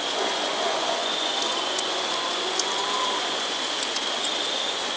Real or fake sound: fake